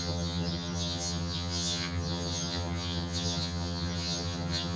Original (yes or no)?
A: no